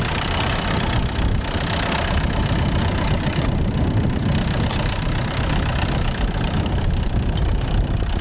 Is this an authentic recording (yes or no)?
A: yes